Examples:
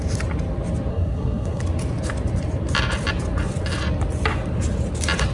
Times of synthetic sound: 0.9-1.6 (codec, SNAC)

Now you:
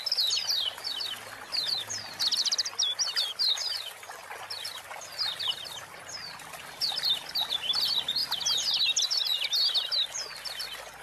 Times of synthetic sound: none

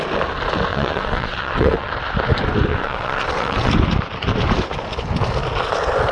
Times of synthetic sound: 0.7-1.9 (vocoder, WaveNeXt); 2.7-3.7

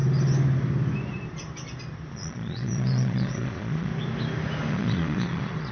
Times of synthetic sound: 2.1-3.9 (vocoder, Vocos); 4.7-5.7

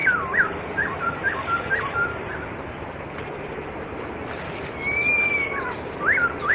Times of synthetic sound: 0.0-3.4 (vocoder, BigVGAN v2); 5.5-6.5

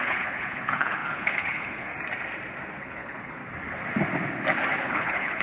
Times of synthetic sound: 0.0-1.9 (codec, HILCodec); 2.8-3.4; 4.8-5.4